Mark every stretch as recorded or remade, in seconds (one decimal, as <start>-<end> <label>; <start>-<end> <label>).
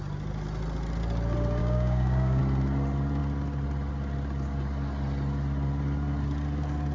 0.0-1.6 recorded; 1.6-2.4 remade; 2.4-6.9 recorded